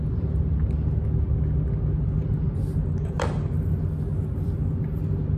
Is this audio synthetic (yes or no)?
no